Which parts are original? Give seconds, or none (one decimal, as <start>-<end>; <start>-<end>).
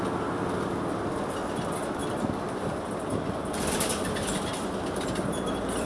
0.0-5.9